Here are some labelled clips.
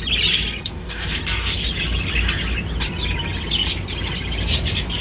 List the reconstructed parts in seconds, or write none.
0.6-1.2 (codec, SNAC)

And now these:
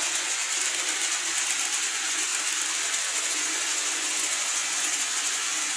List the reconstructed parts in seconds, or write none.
0.0-0.4 (vocoder, Vocos); 1.9-2.3; 3.0-5.8

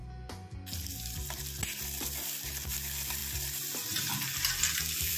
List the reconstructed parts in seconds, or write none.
2.1-5.2 (vocoder, BigVGAN v2)

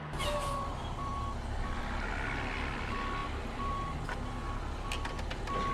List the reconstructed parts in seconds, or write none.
none

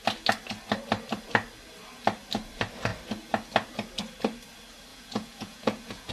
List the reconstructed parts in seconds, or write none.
4.9-6.1 (vocoder, Vocos)